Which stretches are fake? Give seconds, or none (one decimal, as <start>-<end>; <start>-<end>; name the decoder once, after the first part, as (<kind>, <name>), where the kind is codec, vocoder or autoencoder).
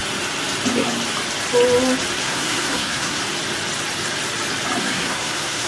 2.2-3.2 (codec, SNAC); 4.8-5.7